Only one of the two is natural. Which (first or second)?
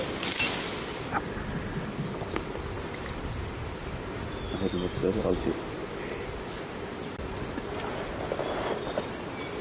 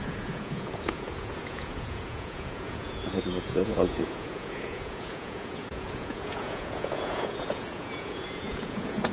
first